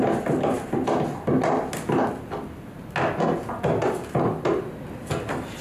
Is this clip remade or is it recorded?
recorded